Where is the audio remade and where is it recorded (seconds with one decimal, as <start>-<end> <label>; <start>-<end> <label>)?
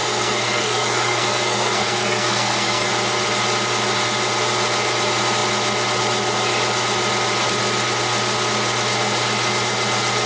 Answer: 0.0-2.9 remade; 2.9-10.3 recorded